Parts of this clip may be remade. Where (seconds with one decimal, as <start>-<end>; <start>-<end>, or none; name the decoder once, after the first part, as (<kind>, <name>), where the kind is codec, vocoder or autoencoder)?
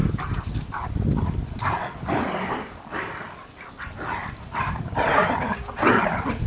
0.0-5.2 (vocoder, BigVGAN v2); 5.8-6.5